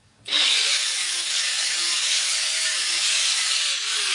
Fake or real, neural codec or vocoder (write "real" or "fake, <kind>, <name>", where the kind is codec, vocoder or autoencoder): fake, codec, DAC